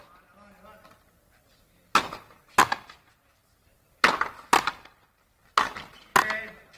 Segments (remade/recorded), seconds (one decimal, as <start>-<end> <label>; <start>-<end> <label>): 0.0-6.8 recorded